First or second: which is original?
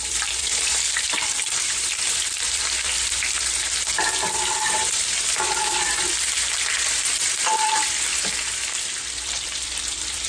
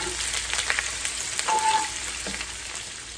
second